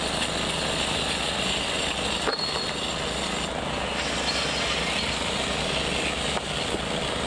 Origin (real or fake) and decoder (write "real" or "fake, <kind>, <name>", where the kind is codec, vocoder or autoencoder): real